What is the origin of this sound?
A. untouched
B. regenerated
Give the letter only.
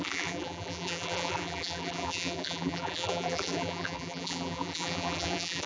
B